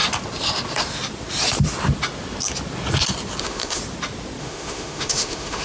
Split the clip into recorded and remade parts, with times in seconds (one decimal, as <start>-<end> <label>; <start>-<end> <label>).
0.0-3.4 recorded; 3.4-3.8 remade; 3.8-4.4 recorded; 4.4-5.6 remade